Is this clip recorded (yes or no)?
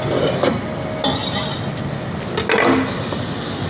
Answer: yes